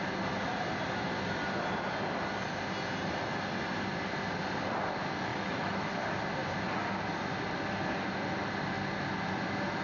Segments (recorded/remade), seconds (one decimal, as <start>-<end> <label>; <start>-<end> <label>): 0.0-5.3 recorded; 5.3-5.9 remade; 5.9-9.8 recorded